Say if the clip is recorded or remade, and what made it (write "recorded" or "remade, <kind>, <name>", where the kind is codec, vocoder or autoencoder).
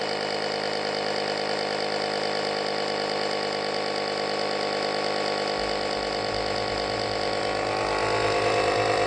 recorded